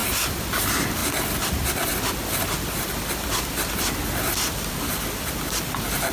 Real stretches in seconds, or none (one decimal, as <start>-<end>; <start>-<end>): 0.0-6.1